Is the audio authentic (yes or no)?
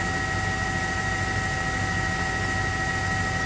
yes